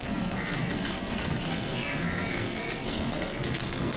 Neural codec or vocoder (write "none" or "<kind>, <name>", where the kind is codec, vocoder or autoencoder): codec, SNAC